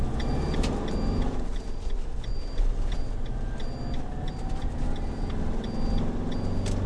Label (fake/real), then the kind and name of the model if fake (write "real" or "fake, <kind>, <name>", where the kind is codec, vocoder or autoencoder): real